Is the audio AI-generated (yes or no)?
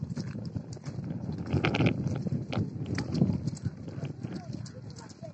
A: no